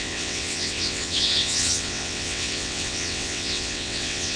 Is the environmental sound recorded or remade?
remade